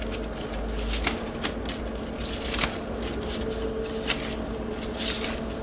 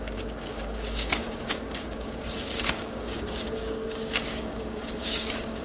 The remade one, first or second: second